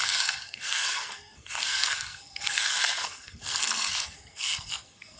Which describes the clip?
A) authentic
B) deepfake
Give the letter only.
B